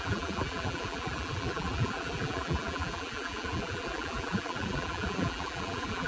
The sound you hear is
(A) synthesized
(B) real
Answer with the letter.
A